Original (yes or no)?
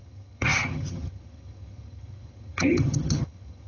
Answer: no